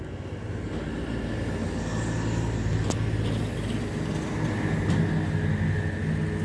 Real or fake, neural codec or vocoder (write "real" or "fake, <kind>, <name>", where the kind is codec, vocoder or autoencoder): real